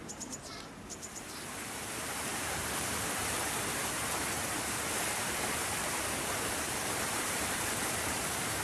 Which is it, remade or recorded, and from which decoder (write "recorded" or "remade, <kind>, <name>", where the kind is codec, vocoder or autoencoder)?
remade, vocoder, BigVGAN v2